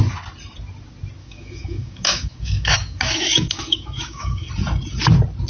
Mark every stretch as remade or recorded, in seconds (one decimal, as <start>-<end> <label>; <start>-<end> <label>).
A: 0.0-1.2 recorded; 1.2-4.5 remade; 4.5-5.5 recorded